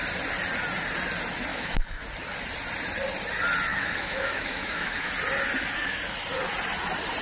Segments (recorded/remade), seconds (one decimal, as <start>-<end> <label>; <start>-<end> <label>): 0.0-1.5 recorded; 1.5-2.0 remade; 2.0-3.7 recorded; 3.7-5.1 remade; 5.1-7.2 recorded